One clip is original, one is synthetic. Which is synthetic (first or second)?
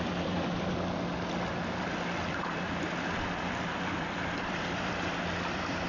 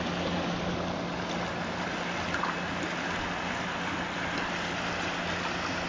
first